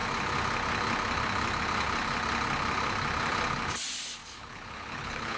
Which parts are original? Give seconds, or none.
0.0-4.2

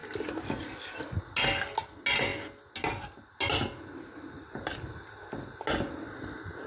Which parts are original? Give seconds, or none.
0.0-6.7

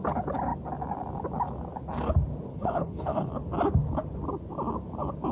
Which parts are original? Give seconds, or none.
0.0-2.5; 3.3-5.3

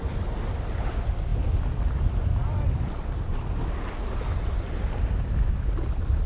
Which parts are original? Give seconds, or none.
0.0-6.3

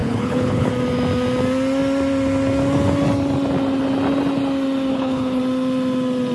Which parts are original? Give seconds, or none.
0.7-4.9; 5.4-6.3